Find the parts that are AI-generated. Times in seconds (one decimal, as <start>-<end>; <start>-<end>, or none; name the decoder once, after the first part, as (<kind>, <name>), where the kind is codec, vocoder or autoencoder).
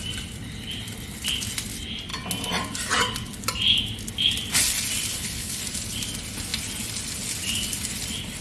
5.1-5.6 (codec, HILCodec)